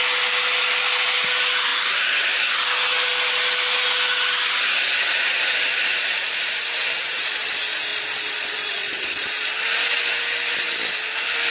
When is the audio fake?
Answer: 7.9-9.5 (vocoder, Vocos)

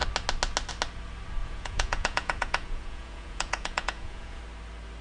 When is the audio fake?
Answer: 1.4-4.4 (vocoder, Vocos)

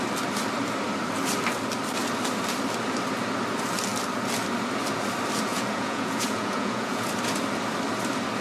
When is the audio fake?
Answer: 5.5-7.1 (vocoder, Vocos)

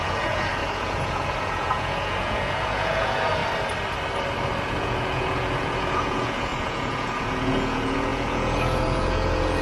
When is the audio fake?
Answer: 0.0-3.4 (vocoder, Vocos); 4.6-9.6

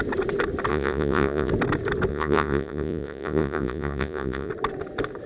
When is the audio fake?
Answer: 0.7-1.5 (vocoder, Vocos); 2.1-4.5

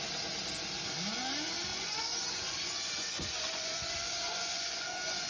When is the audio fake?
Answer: 1.7-5.3 (vocoder, Vocos)

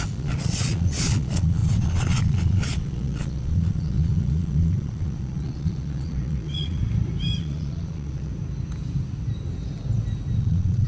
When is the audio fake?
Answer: 0.0-6.8 (vocoder, Vocos); 7.4-8.3; 10.4-10.9

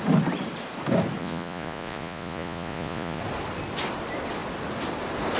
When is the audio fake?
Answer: 1.2-3.2 (vocoder, Vocos)